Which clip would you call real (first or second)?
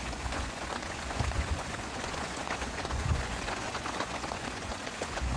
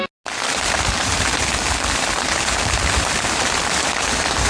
second